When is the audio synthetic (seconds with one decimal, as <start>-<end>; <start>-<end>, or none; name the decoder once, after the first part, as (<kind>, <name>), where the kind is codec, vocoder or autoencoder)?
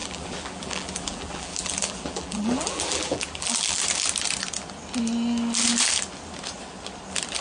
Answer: 0.0-3.8 (vocoder, BigVGAN v2)